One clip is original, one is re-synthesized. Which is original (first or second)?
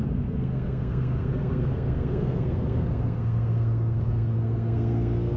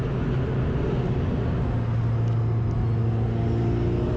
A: second